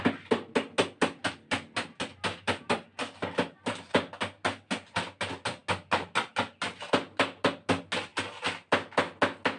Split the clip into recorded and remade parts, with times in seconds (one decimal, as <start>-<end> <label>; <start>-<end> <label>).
0.0-9.6 recorded